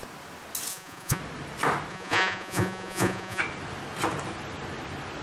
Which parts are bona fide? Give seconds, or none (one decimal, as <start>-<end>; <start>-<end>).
0.0-0.7; 1.2-1.9; 3.4-5.2